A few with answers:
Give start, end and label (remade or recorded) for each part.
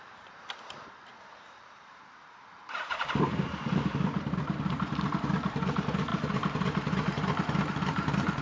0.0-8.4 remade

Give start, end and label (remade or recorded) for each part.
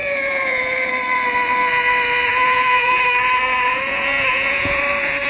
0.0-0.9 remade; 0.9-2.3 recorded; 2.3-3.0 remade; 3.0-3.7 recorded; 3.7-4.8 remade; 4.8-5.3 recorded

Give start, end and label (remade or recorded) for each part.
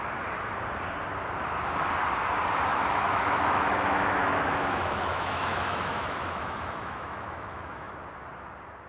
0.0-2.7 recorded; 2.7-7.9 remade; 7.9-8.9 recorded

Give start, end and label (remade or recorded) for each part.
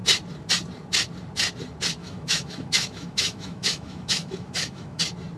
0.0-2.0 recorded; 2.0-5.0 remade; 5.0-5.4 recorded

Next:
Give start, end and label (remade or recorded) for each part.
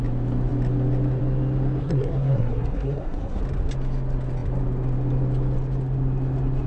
0.0-1.8 recorded; 1.8-3.4 remade; 3.4-6.7 recorded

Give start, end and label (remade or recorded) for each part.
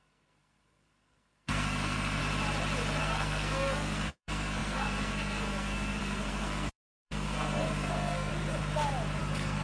0.0-2.2 remade; 2.2-3.0 recorded; 3.0-8.3 remade; 8.3-9.2 recorded; 9.2-9.6 remade